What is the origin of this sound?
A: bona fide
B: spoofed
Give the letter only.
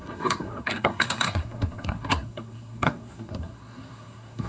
B